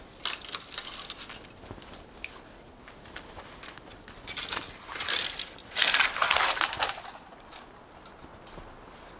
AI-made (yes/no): no